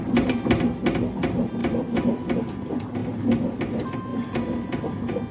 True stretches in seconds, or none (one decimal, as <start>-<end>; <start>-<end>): 0.0-5.3